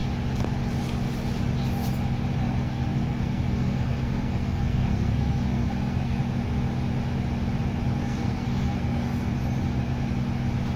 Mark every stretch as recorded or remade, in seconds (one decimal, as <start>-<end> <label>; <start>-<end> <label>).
0.0-2.4 recorded; 2.4-6.2 remade; 6.2-8.0 recorded; 8.0-9.3 remade; 9.3-10.8 recorded